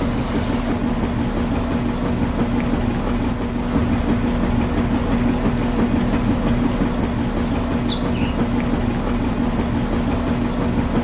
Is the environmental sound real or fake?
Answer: real